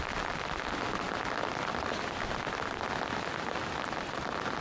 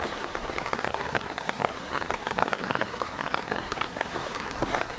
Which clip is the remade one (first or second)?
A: second